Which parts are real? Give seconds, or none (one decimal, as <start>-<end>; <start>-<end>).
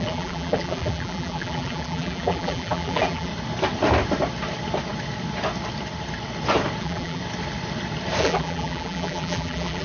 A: 3.3-6.8; 7.2-8.2